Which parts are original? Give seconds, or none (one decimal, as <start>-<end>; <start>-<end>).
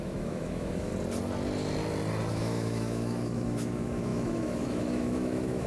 0.9-2.3